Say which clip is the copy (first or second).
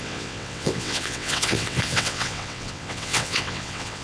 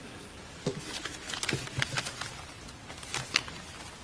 first